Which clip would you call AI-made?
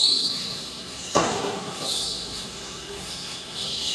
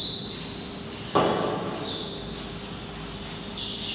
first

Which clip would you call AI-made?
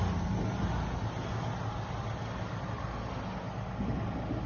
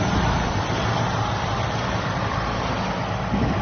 second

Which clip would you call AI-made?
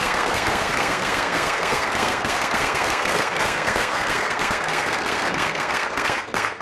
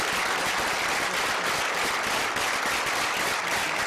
first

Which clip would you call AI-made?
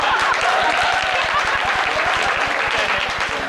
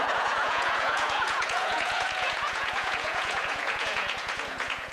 second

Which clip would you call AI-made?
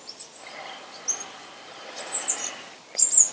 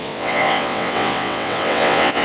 second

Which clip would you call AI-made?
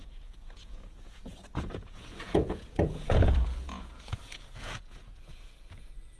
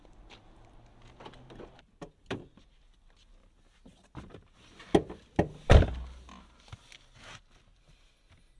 first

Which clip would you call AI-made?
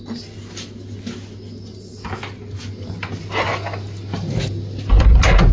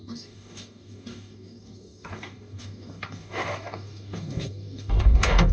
second